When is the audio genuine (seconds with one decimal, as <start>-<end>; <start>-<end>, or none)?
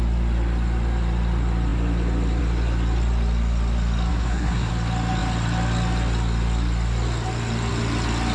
0.0-4.1; 4.7-8.3